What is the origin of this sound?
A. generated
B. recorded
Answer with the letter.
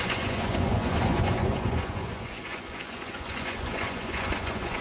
A